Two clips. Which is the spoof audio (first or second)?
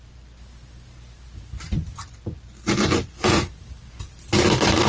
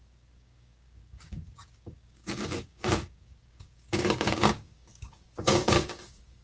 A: second